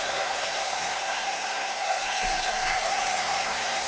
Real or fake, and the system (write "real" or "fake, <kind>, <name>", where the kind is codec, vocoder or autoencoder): fake, codec, SNAC